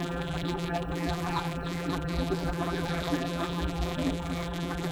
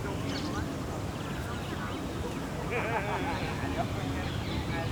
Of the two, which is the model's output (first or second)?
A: first